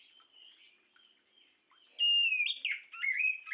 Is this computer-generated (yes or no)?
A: no